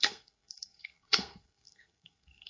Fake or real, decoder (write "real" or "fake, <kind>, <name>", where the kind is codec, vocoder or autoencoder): fake, codec, SNAC